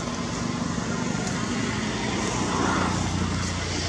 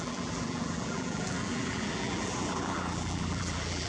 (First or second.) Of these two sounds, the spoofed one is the second